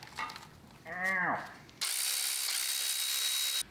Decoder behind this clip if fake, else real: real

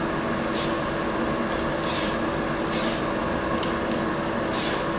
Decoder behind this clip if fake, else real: real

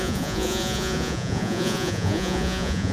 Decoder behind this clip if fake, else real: fake, vocoder, Vocos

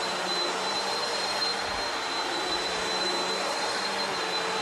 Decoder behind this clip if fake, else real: fake, vocoder, BigVGAN v2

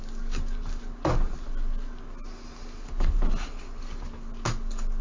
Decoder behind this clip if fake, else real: real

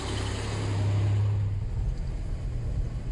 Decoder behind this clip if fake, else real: real